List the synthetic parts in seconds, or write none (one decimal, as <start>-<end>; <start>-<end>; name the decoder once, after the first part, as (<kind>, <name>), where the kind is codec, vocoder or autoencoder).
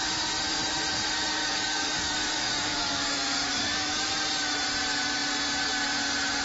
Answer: 1.4-4.1 (codec, DAC)